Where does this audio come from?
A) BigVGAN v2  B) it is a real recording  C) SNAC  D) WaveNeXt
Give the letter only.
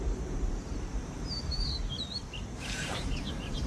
A